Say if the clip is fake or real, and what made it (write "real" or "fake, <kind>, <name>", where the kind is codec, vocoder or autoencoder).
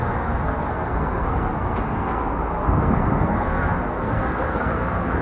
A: fake, codec, SNAC